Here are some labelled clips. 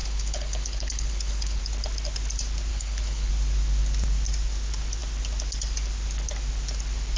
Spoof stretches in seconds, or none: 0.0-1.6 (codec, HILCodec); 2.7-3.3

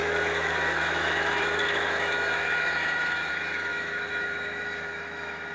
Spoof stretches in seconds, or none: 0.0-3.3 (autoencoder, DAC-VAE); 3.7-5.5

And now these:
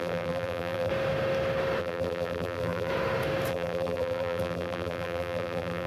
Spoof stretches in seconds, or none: 0.0-0.9 (vocoder, BigVGAN v2); 1.8-2.9; 3.5-5.9